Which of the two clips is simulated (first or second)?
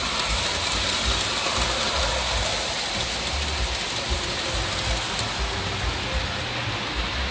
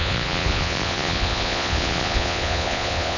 second